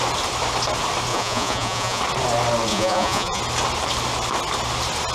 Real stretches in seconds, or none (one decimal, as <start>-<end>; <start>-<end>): 0.0-1.1; 2.0-2.7; 3.4-5.1